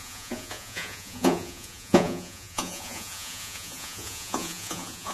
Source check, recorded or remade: remade